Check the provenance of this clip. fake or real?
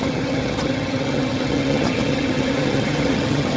fake